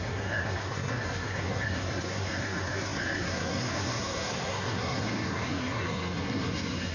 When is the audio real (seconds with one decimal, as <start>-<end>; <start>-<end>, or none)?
none